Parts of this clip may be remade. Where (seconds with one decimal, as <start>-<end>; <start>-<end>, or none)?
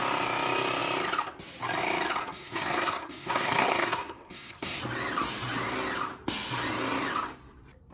2.2-4.8